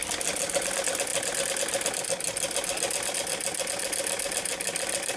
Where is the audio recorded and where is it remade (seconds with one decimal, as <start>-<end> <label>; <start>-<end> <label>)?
0.0-5.2 recorded